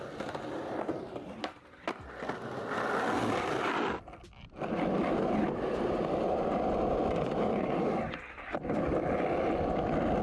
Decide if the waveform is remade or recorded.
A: recorded